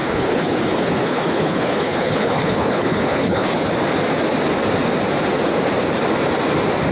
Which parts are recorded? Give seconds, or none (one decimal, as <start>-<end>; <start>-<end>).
3.7-6.9